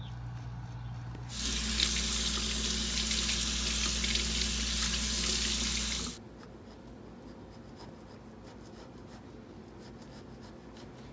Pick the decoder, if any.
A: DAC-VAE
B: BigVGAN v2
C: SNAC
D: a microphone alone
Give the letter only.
D